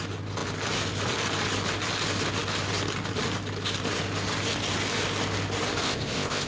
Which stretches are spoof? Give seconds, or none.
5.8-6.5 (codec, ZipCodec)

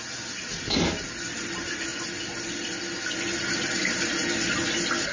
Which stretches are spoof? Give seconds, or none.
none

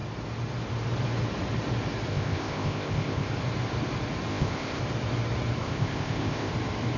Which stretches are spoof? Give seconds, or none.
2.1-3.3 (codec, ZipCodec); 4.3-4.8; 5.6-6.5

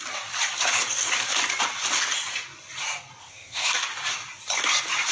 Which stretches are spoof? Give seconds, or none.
3.2-3.7 (codec, ZipCodec)

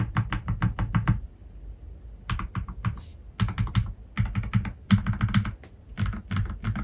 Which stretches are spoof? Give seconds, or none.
none

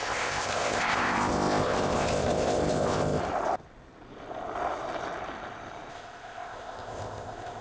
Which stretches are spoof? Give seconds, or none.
0.0-3.2 (codec, ZipCodec); 5.9-7.6

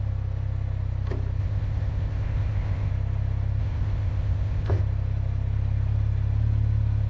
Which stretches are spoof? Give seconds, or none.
1.4-2.9 (codec, ZipCodec); 3.6-4.8

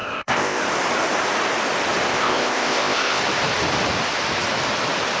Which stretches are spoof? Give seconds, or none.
0.0-0.6 (codec, ZipCodec); 2.1-3.2